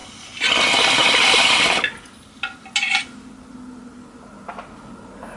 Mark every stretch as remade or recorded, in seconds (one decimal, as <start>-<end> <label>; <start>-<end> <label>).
0.0-5.4 recorded